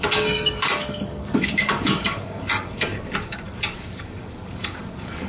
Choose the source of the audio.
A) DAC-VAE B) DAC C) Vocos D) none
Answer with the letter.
B